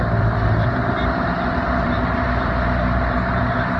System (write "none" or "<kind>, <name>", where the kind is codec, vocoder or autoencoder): vocoder, BigVGAN v2